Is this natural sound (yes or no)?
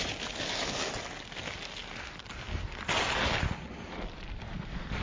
yes